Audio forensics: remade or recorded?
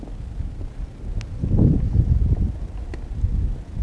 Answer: recorded